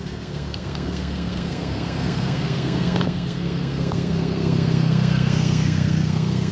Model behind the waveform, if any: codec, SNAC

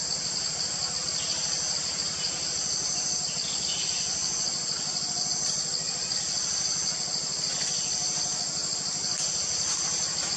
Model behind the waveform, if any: none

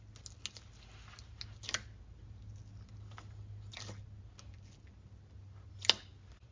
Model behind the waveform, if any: none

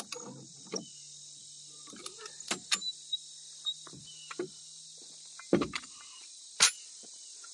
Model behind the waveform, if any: none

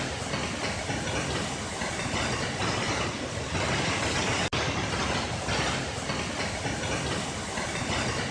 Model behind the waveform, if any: none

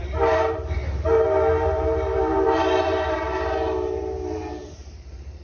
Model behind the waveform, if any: vocoder, BigVGAN v2